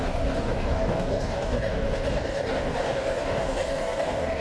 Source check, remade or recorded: remade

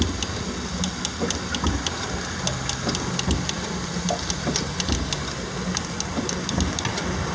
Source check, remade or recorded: recorded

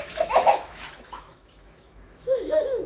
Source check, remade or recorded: remade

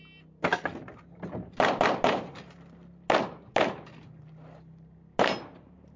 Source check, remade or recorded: recorded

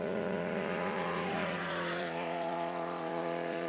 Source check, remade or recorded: remade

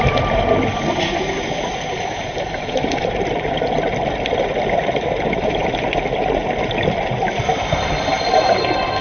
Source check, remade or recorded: remade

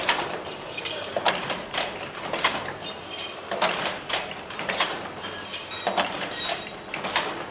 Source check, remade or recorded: remade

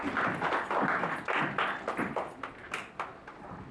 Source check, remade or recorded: recorded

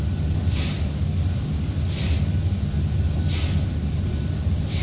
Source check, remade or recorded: recorded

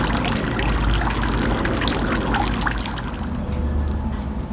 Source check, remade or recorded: recorded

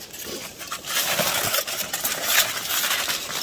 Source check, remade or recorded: recorded